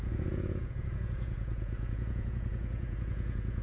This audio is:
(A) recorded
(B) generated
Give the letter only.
B